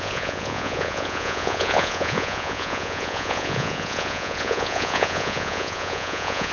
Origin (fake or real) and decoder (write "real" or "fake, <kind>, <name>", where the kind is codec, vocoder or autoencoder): fake, vocoder, Vocos